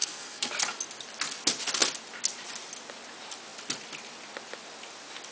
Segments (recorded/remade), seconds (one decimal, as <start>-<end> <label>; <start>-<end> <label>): 0.0-0.5 remade; 0.5-5.3 recorded